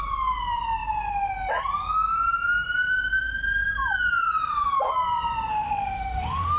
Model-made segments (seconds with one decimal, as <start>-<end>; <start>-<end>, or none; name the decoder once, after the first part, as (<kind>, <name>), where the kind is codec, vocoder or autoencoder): 5.5-6.6 (autoencoder, DAC-VAE)